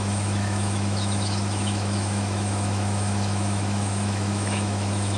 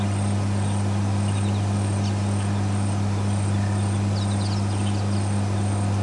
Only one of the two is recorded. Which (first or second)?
second